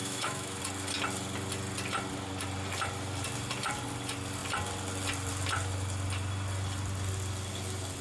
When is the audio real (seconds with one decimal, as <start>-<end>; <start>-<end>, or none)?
0.6-8.0